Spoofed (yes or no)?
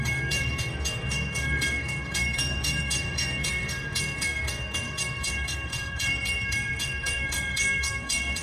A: yes